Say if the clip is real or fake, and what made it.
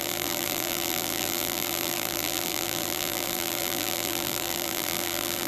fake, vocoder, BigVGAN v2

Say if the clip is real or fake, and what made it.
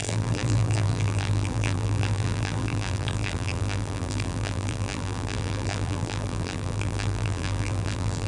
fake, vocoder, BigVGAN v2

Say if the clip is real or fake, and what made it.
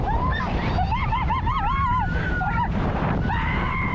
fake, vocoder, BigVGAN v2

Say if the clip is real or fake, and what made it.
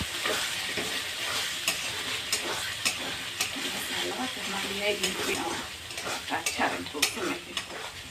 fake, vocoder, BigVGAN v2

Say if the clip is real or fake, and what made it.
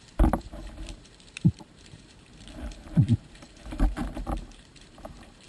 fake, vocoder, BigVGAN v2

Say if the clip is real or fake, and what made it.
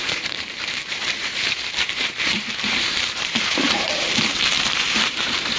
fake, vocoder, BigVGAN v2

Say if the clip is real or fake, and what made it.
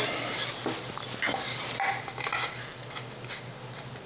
real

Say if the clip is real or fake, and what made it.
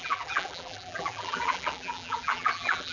fake, vocoder, BigVGAN v2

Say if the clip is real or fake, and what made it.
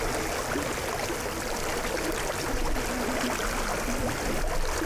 real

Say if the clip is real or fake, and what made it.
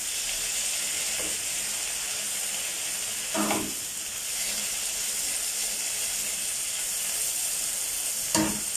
real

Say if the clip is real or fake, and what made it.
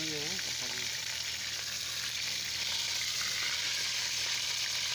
fake, vocoder, BigVGAN v2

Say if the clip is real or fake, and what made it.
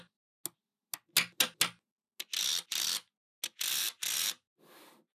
real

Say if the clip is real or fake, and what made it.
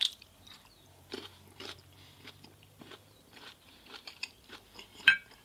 fake, vocoder, BigVGAN v2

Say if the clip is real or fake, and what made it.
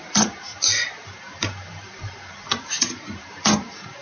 fake, vocoder, BigVGAN v2